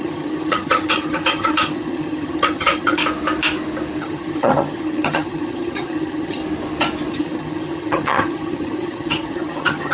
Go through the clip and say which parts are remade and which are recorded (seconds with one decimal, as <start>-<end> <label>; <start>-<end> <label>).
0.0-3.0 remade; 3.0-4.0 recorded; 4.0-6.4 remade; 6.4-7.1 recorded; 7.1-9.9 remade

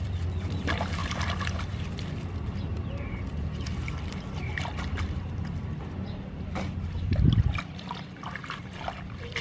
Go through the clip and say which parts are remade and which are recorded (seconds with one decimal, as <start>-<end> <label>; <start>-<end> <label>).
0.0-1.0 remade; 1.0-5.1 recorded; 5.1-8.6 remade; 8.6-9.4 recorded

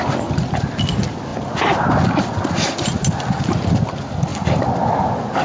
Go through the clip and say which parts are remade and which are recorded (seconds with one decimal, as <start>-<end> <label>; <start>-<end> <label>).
0.0-5.4 recorded

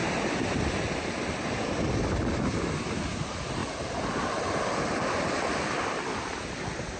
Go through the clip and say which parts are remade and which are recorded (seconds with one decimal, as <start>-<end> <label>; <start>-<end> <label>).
0.0-7.0 recorded

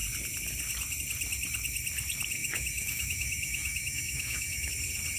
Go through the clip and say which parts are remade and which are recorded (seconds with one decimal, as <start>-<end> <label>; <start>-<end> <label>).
0.0-2.4 recorded; 2.4-4.7 remade; 4.7-5.2 recorded

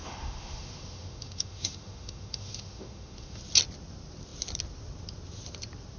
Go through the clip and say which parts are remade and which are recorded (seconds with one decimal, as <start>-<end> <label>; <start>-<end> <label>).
0.0-3.4 remade; 3.4-6.0 recorded